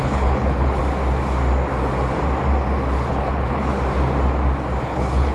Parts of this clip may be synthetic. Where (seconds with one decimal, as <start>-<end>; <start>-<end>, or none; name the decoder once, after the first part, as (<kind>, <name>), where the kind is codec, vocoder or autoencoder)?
0.0-0.8 (codec, HILCodec); 3.1-3.7; 4.8-5.3